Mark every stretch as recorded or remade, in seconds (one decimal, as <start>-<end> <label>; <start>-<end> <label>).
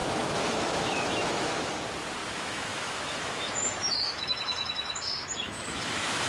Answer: 0.0-1.7 remade; 1.7-2.2 recorded; 2.2-6.3 remade